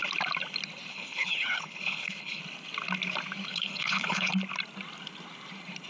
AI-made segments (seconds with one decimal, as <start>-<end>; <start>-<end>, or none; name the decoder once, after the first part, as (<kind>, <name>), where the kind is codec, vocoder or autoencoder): 0.9-2.4 (codec, HILCodec); 3.5-4.3